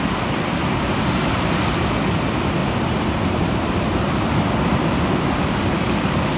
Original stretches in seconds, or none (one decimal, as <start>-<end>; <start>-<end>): 0.0-5.4

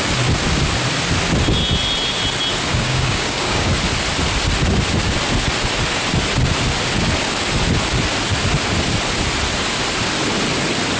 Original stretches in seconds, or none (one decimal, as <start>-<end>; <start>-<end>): 0.0-2.7; 3.7-11.0

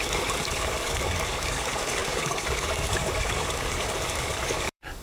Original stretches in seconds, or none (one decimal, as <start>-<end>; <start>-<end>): none

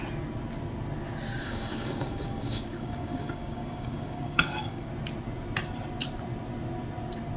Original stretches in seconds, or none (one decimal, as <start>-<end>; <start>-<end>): 0.0-1.4; 4.9-7.4

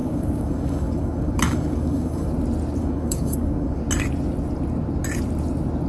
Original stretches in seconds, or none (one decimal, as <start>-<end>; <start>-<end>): 2.3-2.8; 3.8-5.9

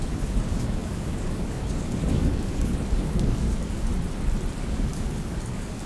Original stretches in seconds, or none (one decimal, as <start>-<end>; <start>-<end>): 3.9-4.6

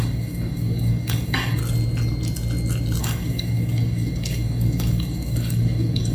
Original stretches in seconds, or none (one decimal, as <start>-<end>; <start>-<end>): 1.6-3.0

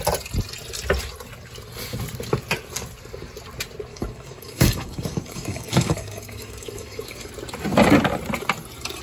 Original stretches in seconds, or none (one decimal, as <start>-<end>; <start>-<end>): 0.0-3.9; 7.3-9.0